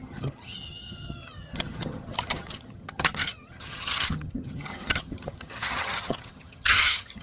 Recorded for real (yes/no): no